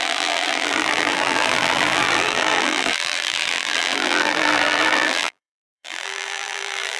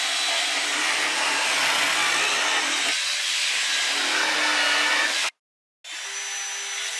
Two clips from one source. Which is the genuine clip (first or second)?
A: second